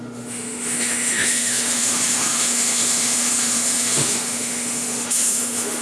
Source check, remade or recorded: remade